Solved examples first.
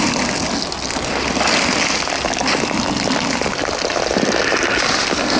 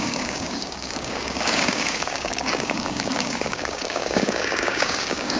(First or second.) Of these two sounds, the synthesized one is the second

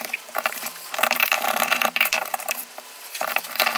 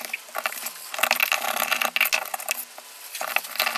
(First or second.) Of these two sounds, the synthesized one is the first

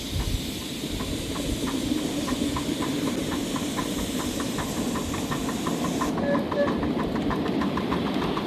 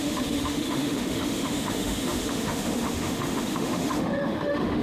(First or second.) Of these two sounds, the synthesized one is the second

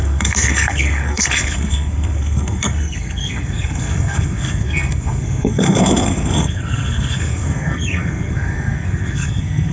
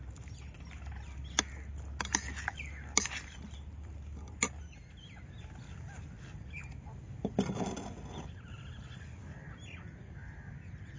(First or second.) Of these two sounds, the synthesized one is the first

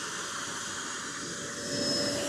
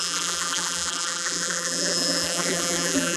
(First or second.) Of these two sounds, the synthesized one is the second